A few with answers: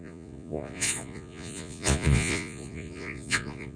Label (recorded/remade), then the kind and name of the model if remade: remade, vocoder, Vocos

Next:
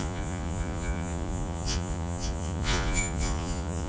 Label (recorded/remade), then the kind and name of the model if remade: remade, vocoder, Vocos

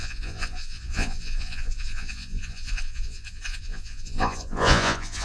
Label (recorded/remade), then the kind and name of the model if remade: remade, vocoder, Vocos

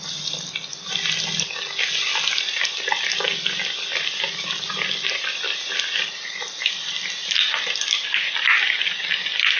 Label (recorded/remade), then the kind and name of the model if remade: recorded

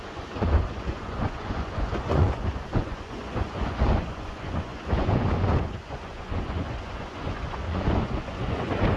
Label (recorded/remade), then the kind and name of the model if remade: remade, vocoder, Vocos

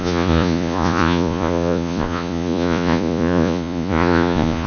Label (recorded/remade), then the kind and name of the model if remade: remade, vocoder, Vocos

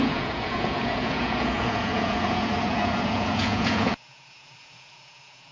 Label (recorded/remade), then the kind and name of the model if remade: remade, vocoder, Vocos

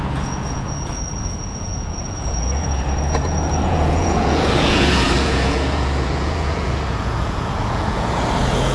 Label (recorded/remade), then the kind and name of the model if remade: remade, vocoder, Vocos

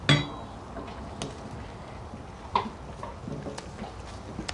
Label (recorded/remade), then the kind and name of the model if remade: recorded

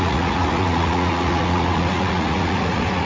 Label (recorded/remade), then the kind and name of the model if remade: remade, vocoder, Vocos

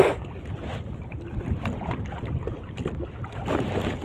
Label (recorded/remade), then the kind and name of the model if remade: recorded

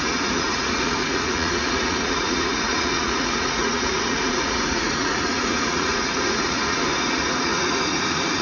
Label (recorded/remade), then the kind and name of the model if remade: remade, vocoder, Vocos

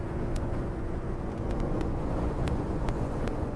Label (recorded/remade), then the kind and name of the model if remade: remade, vocoder, Vocos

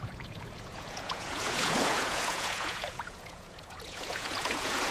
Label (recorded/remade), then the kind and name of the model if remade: remade, vocoder, Vocos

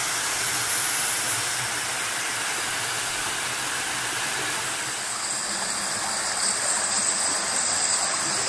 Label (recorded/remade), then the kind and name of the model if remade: recorded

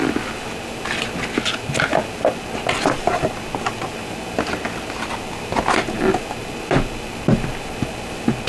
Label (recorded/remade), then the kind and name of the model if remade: recorded